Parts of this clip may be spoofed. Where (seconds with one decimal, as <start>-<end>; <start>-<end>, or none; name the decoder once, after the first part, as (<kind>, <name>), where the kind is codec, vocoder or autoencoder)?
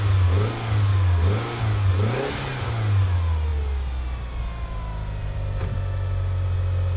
0.9-1.6 (codec, DAC)